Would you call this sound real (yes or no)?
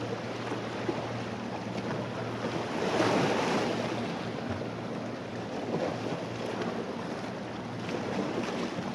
yes